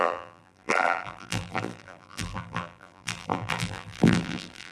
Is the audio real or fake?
fake